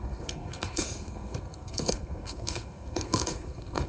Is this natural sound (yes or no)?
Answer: no